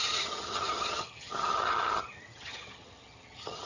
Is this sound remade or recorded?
remade